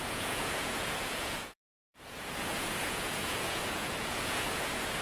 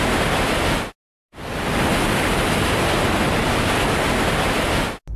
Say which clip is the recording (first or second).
second